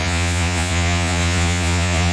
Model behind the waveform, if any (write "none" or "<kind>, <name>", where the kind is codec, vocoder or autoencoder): vocoder, Vocos